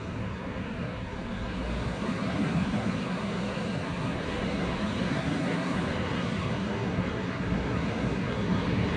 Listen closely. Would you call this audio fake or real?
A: fake